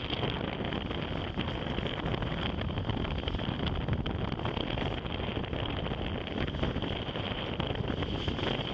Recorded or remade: recorded